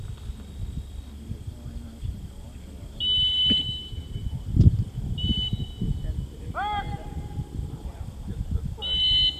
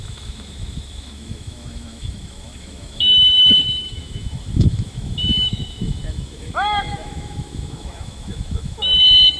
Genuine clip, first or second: first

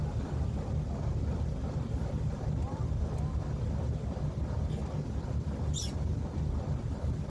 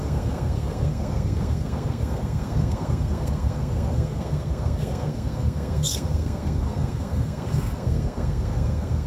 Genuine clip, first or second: first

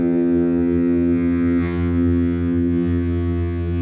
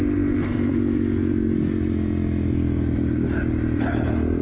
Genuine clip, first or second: second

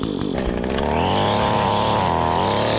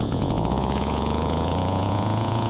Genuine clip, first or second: first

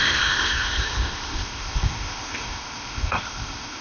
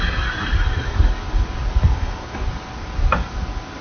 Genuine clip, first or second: second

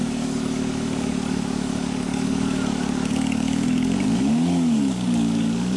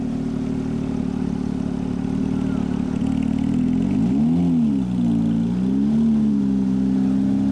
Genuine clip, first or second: second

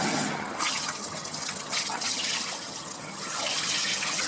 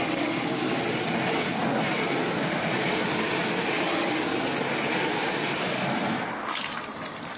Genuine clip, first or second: second